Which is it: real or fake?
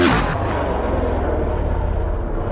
real